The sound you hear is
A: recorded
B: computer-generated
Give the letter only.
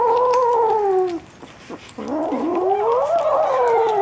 A